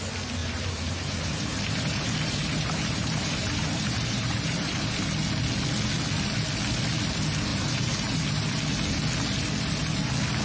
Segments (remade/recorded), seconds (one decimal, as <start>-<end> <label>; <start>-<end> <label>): 0.0-0.4 recorded; 0.4-4.9 remade; 4.9-7.5 recorded; 7.5-8.6 remade; 8.6-10.4 recorded